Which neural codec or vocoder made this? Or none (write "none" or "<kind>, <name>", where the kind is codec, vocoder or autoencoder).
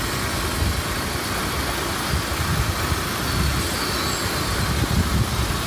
none